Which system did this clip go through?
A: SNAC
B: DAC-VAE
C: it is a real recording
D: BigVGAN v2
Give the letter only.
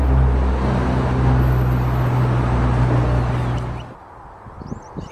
C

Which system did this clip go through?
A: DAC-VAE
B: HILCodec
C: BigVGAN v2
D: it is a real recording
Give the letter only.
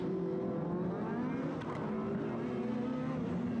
D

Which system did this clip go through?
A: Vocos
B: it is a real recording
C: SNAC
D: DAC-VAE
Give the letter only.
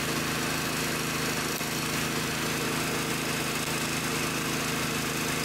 B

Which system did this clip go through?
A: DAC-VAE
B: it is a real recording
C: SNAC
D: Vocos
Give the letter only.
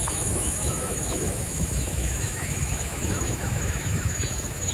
A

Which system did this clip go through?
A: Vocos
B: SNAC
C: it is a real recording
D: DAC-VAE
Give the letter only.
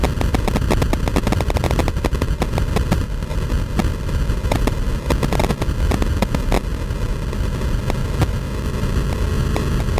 C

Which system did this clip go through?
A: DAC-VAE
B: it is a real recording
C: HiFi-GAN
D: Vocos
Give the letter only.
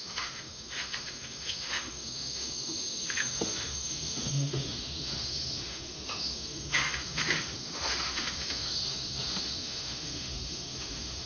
A